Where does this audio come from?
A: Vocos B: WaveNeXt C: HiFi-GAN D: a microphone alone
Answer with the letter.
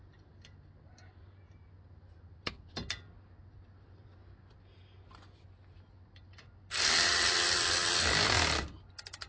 D